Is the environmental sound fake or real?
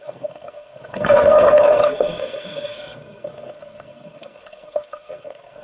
fake